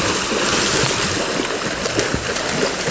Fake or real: real